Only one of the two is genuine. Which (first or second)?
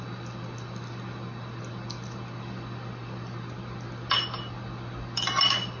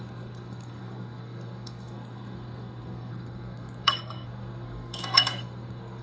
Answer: first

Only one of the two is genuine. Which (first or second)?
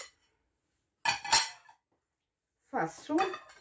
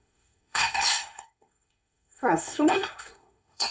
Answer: first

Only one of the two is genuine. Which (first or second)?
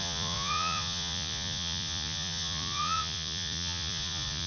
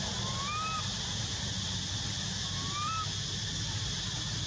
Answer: second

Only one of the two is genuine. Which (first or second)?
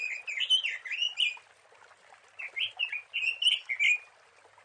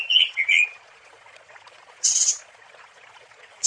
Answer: first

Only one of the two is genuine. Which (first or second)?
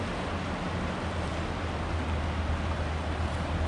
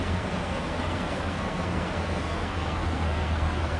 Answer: first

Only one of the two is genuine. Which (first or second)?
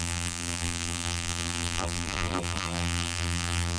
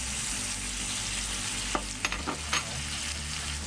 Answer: second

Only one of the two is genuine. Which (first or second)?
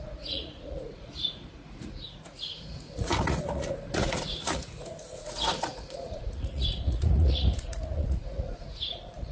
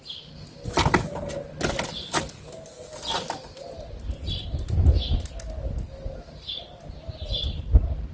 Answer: second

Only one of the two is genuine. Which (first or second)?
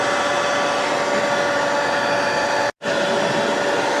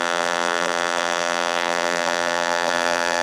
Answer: first